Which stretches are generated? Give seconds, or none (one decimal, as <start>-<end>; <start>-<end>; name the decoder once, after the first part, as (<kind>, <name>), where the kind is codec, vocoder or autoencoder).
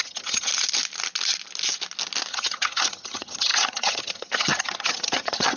0.0-0.5 (vocoder, HiFi-GAN); 2.3-5.6